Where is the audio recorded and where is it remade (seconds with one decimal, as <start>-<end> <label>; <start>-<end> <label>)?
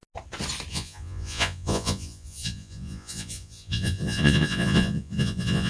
0.0-0.7 recorded; 0.7-5.7 remade